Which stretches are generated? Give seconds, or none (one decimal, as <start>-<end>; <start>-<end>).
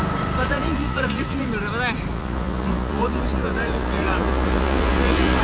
0.5-1.5; 2.1-5.4